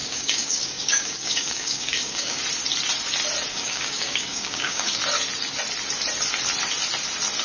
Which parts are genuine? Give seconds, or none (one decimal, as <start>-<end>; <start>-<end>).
2.4-3.5; 5.0-7.4